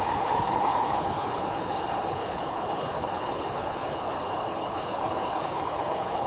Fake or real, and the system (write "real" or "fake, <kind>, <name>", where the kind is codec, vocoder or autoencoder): fake, codec, HILCodec